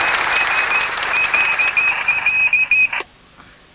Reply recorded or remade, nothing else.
recorded